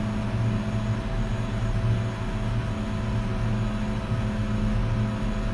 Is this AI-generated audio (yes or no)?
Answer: no